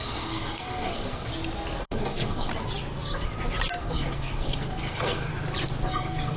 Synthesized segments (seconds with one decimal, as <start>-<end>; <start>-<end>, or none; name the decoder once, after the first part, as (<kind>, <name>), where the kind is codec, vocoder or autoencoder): 0.0-1.3 (codec, SNAC); 1.8-2.5; 3.8-5.3; 5.9-6.4